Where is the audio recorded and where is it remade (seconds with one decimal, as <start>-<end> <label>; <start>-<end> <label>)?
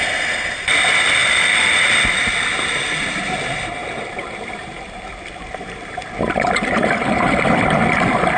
0.0-3.8 recorded; 3.8-8.4 remade